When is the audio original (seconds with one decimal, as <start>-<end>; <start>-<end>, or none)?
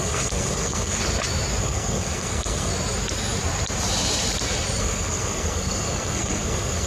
1.0-1.6; 2.7-4.8